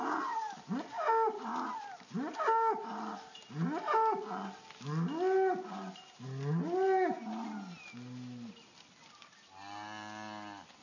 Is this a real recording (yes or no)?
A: yes